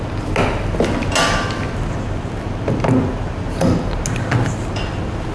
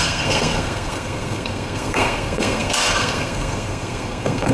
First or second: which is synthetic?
second